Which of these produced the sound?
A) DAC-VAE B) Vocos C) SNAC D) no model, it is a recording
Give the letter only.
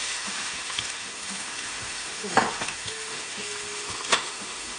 A